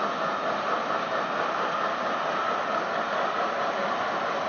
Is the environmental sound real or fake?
real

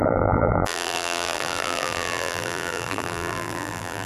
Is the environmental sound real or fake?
fake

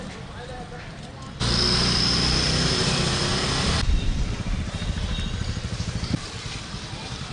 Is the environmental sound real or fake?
fake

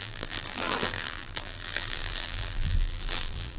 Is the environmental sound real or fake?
fake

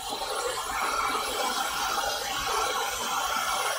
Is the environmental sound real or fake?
fake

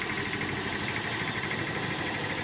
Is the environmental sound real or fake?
fake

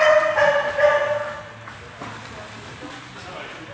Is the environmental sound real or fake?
real